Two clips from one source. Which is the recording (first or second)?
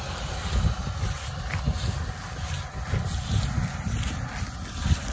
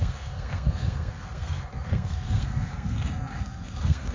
first